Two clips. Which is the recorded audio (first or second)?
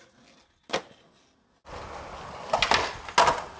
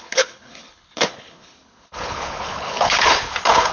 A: first